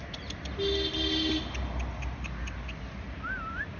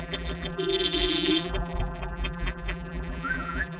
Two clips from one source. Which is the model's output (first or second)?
second